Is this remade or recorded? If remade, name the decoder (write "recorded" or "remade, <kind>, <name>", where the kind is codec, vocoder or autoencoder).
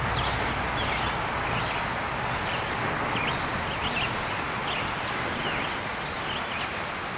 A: recorded